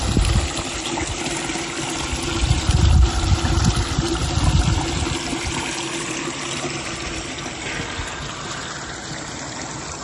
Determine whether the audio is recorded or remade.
recorded